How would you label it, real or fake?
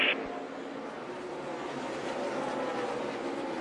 real